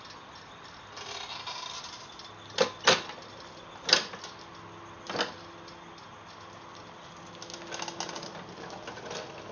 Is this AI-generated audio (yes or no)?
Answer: no